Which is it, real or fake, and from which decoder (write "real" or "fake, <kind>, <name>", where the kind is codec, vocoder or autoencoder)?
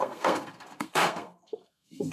fake, codec, SNAC